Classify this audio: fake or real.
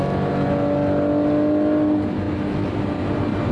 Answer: real